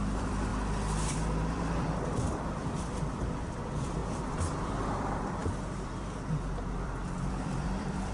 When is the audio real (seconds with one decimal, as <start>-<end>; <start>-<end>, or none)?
4.0-4.8